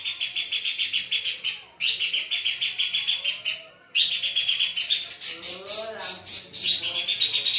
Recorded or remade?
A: recorded